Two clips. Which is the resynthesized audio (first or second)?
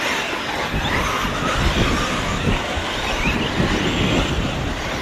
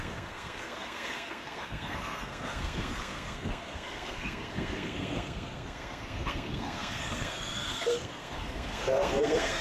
second